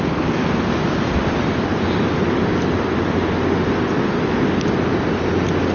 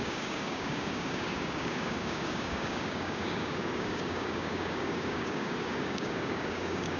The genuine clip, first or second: first